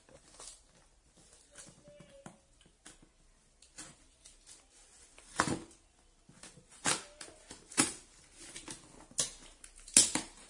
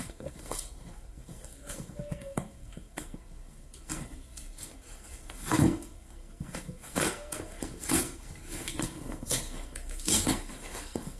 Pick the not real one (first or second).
second